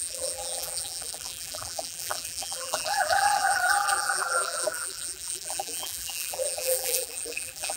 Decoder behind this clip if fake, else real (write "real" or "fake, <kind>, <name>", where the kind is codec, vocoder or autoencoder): fake, vocoder, BigVGAN v2